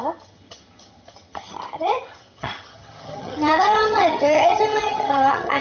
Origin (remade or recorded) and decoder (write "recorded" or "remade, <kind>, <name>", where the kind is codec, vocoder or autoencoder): remade, vocoder, HiFi-GAN